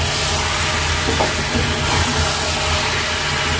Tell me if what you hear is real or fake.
real